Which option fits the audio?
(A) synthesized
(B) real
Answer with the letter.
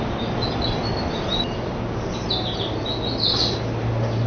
B